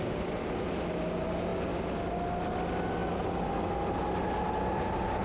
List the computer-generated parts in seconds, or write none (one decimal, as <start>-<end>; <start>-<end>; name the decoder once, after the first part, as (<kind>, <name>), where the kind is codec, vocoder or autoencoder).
none